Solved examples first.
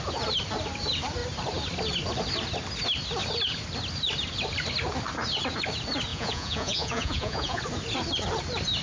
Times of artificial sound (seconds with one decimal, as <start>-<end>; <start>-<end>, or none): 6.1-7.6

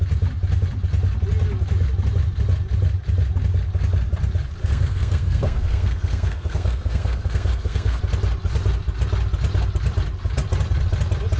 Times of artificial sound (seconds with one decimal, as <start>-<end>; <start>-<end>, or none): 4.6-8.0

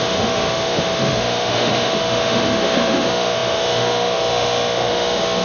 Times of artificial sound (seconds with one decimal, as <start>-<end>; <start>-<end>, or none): 0.0-5.4

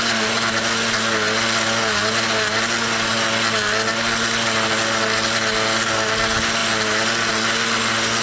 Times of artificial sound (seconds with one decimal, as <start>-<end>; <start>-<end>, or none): none